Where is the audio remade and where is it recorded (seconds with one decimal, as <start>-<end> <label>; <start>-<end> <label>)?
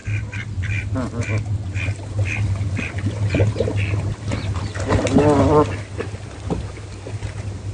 0.0-7.7 recorded